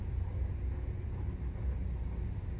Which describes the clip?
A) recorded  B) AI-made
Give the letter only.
A